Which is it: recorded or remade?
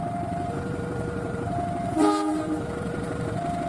remade